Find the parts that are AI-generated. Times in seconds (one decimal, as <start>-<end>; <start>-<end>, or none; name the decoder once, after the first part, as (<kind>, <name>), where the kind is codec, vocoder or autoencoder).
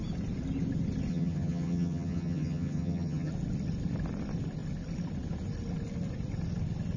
1.1-3.3 (vocoder, HiFi-GAN)